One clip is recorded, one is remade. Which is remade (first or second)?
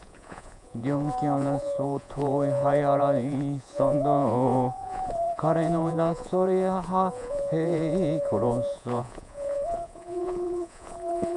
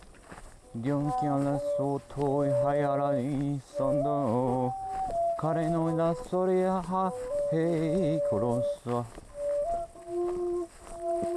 first